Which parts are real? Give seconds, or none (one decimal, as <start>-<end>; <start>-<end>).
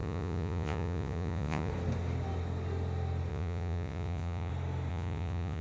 1.7-3.3; 4.5-4.9